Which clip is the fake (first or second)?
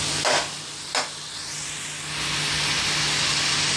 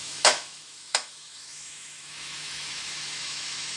second